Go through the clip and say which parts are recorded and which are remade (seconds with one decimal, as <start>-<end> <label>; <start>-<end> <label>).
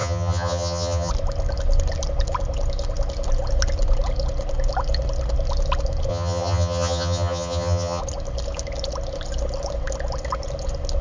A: 0.0-1.1 remade; 1.1-6.1 recorded; 6.1-8.0 remade; 8.0-11.0 recorded